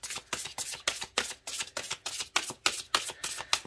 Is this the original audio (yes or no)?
yes